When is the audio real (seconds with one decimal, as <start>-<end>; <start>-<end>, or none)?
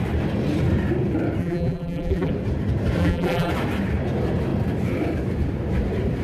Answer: 0.0-1.4; 2.3-3.0; 3.5-6.2